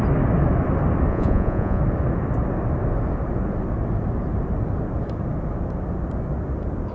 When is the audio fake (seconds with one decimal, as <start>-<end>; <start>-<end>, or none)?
1.1-1.8